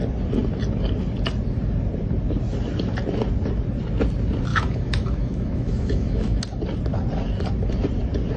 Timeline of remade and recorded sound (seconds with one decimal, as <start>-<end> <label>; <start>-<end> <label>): 0.0-4.5 recorded; 4.5-6.4 remade; 6.4-8.4 recorded